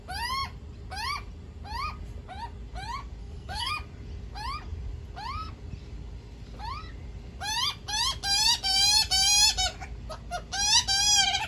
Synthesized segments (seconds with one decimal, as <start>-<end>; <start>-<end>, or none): 3.2-3.7